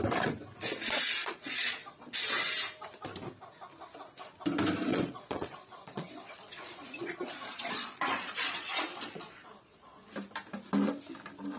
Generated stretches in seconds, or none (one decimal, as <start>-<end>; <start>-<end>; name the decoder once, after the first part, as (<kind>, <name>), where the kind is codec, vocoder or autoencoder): 1.2-2.2 (vocoder, Vocos); 4.9-10.1